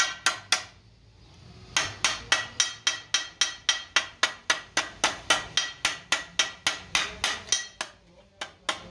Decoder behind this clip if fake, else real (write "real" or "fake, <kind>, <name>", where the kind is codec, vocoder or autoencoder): real